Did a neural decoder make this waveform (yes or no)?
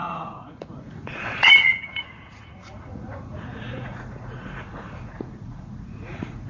yes